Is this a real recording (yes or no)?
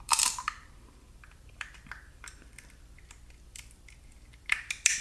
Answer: no